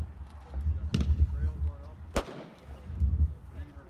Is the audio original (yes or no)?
yes